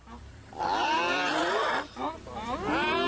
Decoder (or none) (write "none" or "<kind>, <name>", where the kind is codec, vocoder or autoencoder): vocoder, BigVGAN v2